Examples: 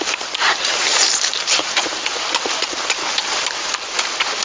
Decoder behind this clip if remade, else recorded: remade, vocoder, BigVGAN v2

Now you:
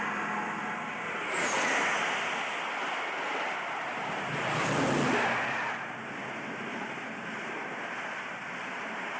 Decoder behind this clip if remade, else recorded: recorded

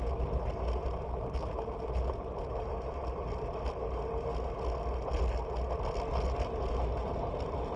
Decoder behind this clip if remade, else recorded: recorded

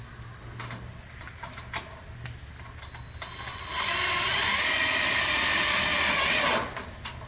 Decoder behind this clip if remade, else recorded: recorded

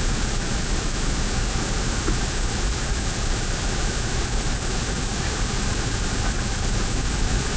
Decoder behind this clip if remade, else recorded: remade, vocoder, Vocos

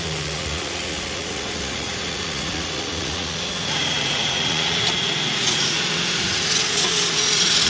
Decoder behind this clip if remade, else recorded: remade, vocoder, Vocos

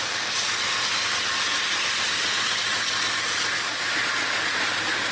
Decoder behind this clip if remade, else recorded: recorded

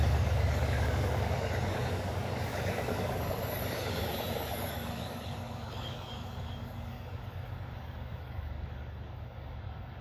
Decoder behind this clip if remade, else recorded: remade, codec, DAC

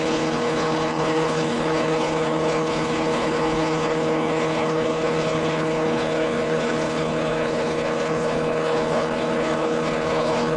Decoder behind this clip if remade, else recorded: remade, codec, HILCodec